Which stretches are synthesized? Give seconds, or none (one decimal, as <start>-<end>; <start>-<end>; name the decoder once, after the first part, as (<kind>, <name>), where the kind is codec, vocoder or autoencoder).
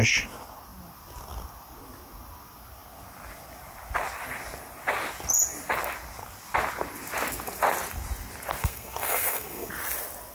8.6-9.7 (codec, SNAC)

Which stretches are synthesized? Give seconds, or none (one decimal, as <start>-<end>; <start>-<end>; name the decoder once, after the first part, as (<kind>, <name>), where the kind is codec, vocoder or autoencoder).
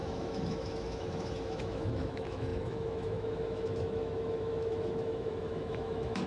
0.0-6.3 (autoencoder, DAC-VAE)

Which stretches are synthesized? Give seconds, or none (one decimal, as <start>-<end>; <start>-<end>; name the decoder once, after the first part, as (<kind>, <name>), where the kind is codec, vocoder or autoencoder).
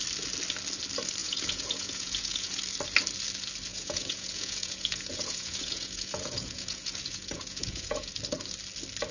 1.2-2.6 (vocoder, Vocos); 3.7-8.1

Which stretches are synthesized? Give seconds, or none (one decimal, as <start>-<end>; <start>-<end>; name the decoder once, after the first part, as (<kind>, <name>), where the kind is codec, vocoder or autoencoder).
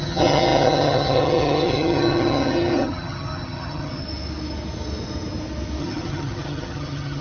0.0-4.0 (vocoder, HiFi-GAN); 5.8-7.2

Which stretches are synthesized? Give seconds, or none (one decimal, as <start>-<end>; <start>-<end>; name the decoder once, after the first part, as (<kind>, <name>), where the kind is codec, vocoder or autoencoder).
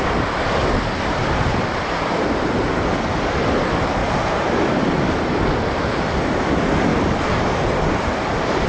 0.6-2.5 (vocoder, BigVGAN v2); 4.0-5.4; 6.9-8.1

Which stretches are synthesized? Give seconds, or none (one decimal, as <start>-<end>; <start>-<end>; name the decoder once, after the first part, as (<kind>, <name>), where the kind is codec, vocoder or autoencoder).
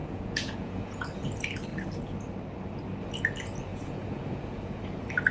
0.0-1.0 (vocoder, Vocos); 3.7-4.8